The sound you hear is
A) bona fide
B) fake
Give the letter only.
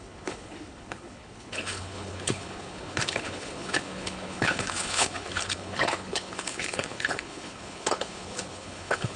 B